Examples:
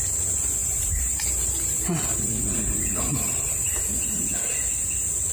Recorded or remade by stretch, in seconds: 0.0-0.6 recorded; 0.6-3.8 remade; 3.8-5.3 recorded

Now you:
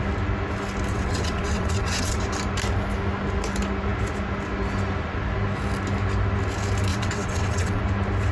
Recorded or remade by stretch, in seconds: 0.0-0.9 recorded; 0.9-2.2 remade; 2.2-6.9 recorded; 6.9-7.8 remade; 7.8-8.3 recorded

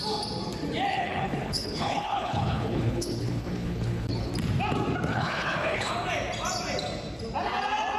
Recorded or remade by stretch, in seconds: 0.0-0.9 recorded; 0.9-4.3 remade; 4.3-5.1 recorded; 5.1-5.9 remade; 5.9-8.0 recorded

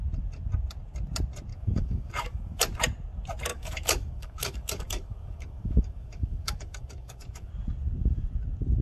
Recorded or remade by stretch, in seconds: 0.0-1.5 recorded; 1.5-2.6 remade; 2.6-3.5 recorded; 3.5-7.5 remade; 7.5-8.8 recorded

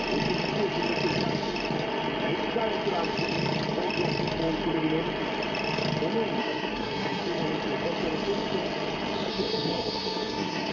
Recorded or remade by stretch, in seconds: 0.0-6.4 recorded; 6.4-7.2 remade; 7.2-9.3 recorded; 9.3-10.7 remade

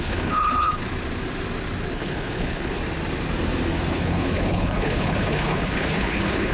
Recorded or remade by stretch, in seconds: 0.0-0.8 remade; 0.8-1.9 recorded; 1.9-2.8 remade; 2.8-3.9 recorded; 3.9-6.5 remade